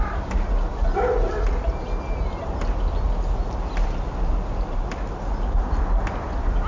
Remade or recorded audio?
recorded